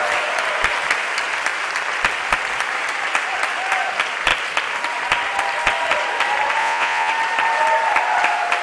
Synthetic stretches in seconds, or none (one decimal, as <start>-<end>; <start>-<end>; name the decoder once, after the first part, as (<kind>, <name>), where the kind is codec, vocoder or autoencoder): 6.6-7.1 (vocoder, Vocos)

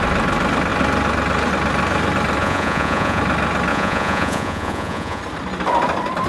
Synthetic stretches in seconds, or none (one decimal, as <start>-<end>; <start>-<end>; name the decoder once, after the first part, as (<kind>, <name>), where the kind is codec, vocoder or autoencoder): 2.4-3.2 (vocoder, Vocos); 3.7-5.2

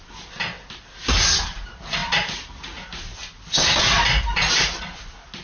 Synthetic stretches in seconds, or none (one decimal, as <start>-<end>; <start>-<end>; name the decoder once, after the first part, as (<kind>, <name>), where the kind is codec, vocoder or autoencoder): none